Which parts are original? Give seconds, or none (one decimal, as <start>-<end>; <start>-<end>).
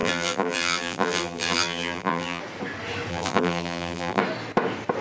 2.4-3.1; 4.2-5.0